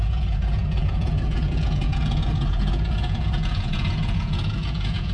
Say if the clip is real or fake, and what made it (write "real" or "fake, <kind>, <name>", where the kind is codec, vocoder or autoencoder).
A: fake, vocoder, Vocos